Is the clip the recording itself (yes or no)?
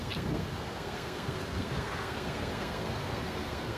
no